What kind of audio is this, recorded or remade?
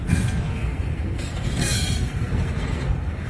remade